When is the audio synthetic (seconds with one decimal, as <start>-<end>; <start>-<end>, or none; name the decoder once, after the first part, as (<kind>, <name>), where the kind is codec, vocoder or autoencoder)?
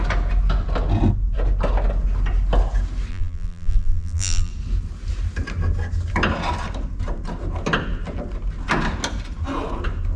3.1-4.5 (vocoder, BigVGAN v2)